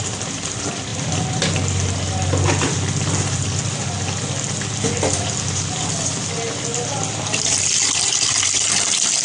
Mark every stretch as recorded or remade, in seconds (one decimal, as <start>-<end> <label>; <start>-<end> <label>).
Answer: 0.0-9.2 recorded